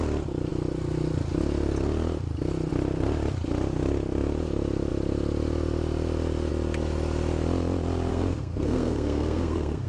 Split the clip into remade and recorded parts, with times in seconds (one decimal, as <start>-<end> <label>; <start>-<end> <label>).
0.0-8.1 recorded; 8.1-9.9 remade